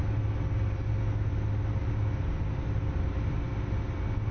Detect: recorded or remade recorded